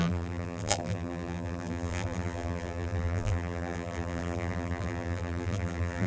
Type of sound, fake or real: fake